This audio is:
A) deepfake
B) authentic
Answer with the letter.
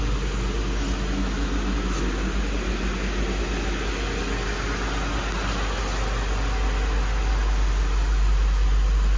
B